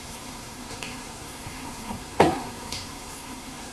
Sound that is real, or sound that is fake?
fake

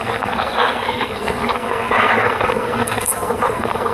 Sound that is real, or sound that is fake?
fake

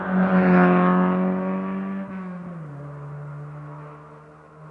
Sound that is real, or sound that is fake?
real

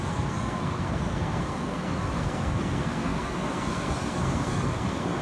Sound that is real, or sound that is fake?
fake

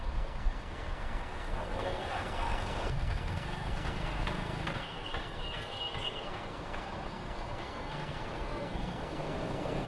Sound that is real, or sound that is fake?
fake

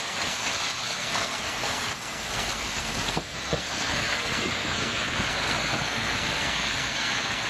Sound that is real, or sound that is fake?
fake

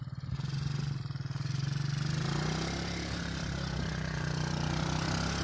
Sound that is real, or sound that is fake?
real